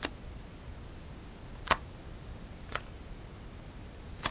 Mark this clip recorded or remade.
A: recorded